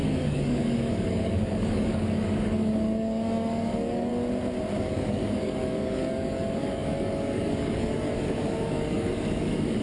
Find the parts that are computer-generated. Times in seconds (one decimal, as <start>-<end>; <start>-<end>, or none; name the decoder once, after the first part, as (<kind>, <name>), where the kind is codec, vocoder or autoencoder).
0.0-4.1 (codec, DAC); 4.8-9.8